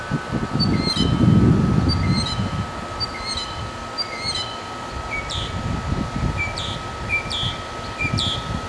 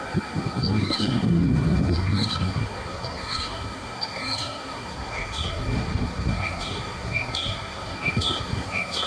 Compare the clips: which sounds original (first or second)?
first